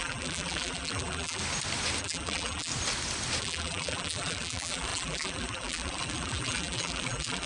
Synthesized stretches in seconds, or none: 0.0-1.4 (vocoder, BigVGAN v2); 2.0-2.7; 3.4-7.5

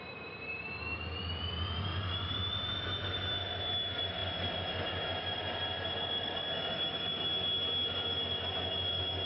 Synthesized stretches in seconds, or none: none

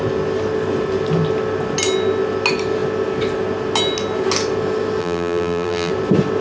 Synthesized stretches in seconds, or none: 5.0-5.9 (vocoder, BigVGAN v2)

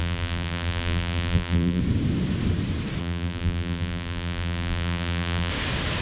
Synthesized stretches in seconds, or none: 0.0-1.8 (vocoder, BigVGAN v2); 3.0-5.5

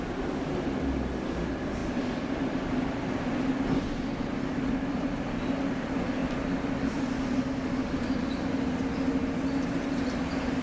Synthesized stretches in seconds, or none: 1.8-5.5 (vocoder, BigVGAN v2); 6.2-7.0

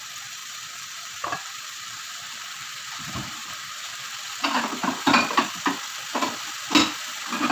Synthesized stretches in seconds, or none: 0.4-4.1 (vocoder, BigVGAN v2); 4.8-5.5